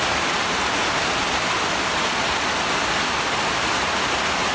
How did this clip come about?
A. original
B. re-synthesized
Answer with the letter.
A